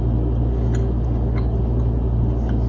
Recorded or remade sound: recorded